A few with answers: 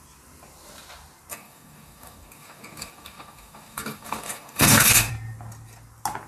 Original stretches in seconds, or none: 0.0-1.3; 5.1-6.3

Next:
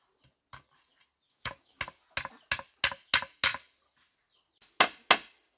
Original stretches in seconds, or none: 0.0-1.3; 1.8-5.6

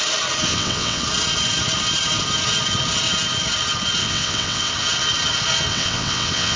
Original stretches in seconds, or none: 0.0-0.5; 1.0-4.0; 4.7-5.7